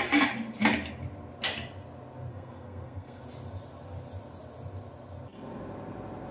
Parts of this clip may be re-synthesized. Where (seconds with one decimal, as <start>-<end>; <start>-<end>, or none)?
2.3-3.2

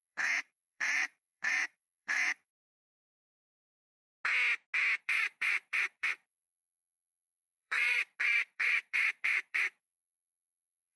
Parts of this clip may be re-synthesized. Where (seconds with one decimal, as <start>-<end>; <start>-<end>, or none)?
0.0-2.5; 5.0-11.0

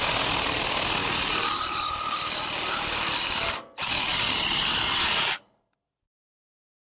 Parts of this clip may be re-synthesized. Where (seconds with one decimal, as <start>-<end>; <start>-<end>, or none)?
none

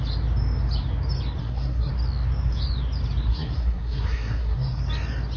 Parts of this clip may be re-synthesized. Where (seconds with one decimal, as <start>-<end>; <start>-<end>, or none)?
1.4-1.9; 3.3-4.8

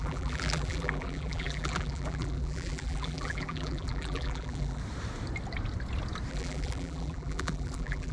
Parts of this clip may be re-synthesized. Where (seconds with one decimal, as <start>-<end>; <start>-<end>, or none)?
0.0-4.8; 6.3-8.1